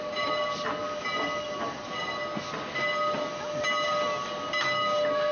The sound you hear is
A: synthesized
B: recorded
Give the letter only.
B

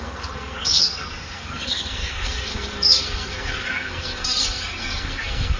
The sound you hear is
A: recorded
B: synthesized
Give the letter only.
B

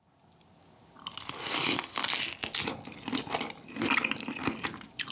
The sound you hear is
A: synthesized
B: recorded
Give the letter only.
B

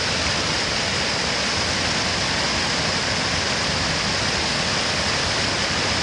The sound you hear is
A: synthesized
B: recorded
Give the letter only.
B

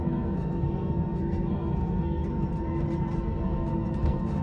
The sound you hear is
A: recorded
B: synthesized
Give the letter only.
B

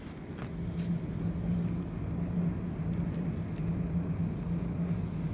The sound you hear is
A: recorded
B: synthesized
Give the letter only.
A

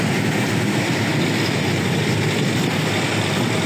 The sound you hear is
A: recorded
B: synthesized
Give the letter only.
A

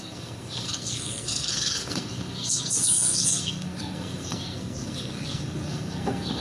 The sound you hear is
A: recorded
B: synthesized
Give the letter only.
B